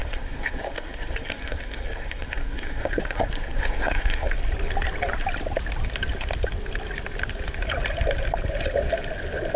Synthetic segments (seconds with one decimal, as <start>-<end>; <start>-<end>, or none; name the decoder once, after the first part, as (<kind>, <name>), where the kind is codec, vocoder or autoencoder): 0.0-4.3 (codec, SNAC)